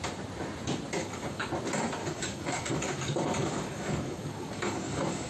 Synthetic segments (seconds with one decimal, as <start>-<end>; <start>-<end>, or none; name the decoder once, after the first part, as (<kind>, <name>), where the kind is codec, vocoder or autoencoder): 1.0-1.5 (codec, DAC); 2.0-5.3